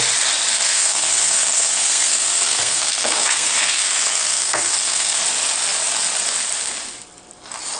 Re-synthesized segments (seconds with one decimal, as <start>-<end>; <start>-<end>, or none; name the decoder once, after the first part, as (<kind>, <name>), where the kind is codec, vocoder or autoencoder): 0.5-5.2 (codec, SNAC)